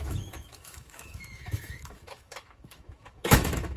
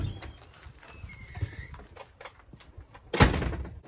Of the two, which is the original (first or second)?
second